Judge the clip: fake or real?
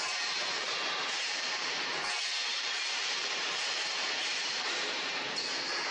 fake